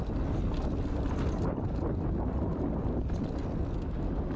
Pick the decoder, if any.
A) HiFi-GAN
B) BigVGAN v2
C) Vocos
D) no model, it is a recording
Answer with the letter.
D